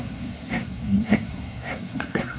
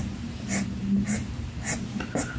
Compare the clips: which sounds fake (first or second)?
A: first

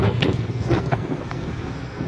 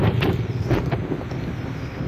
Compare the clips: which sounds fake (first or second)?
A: first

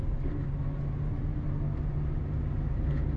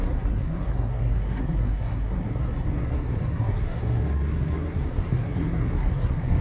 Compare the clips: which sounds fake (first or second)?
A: second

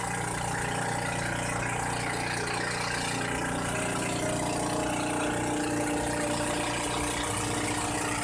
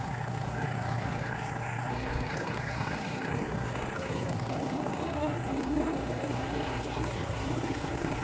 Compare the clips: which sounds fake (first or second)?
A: second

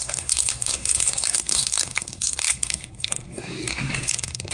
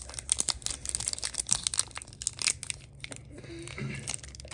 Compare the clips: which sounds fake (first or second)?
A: first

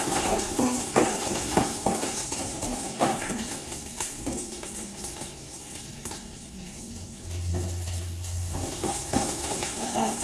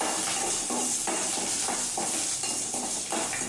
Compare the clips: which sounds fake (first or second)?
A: first